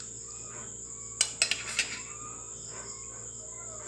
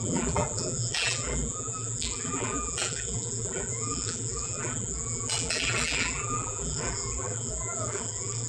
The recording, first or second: first